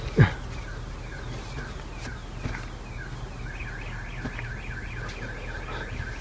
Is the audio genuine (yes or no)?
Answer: yes